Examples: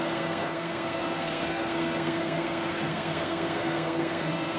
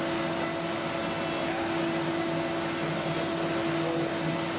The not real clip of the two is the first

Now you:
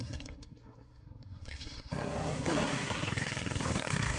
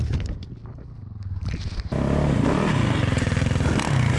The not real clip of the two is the first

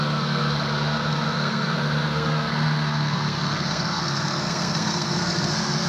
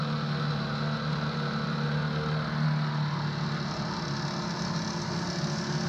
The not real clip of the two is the first